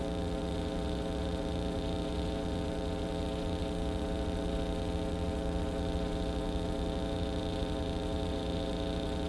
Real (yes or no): no